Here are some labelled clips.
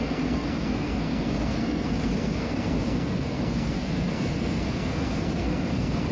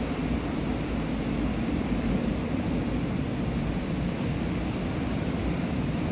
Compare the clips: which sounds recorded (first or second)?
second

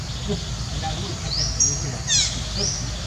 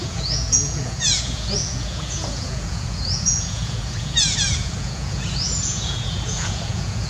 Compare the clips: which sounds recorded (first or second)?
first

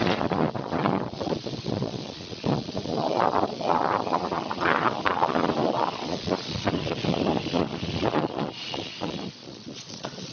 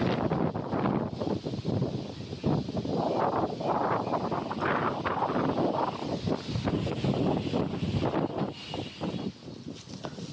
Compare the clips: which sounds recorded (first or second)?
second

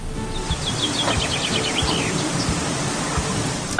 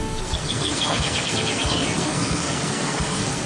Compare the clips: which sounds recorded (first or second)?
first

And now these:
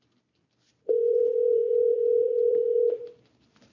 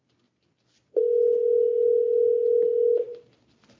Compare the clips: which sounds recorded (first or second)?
second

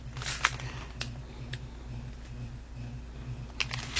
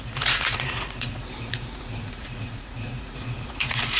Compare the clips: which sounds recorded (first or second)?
first